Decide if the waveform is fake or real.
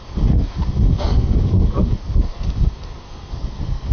fake